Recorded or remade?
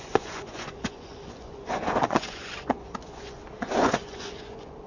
remade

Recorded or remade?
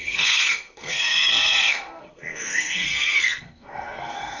remade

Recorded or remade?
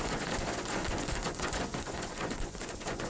remade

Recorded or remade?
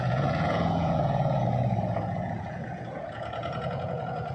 remade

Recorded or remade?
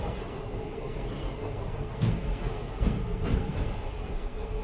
remade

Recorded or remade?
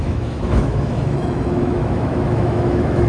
remade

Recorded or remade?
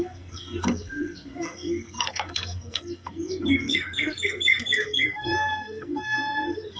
remade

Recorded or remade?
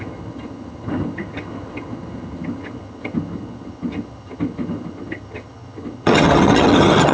remade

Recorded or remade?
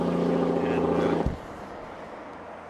recorded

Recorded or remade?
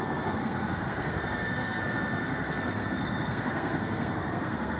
remade